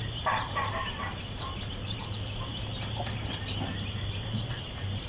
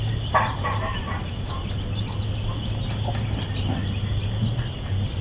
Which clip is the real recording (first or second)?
second